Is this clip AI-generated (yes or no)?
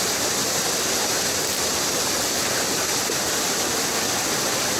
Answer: no